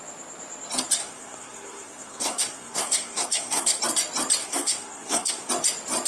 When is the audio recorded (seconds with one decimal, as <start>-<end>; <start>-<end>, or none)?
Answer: 0.0-1.0; 3.8-4.4; 5.5-6.1